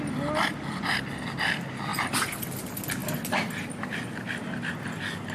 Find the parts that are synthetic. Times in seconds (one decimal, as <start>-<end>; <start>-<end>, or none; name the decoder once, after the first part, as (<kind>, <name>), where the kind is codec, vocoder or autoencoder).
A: none